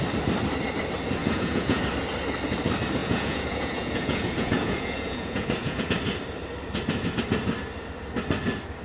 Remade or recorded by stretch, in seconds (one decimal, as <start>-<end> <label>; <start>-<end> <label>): 0.0-1.2 recorded; 1.2-1.8 remade; 1.8-3.0 recorded; 3.0-5.9 remade; 5.9-8.8 recorded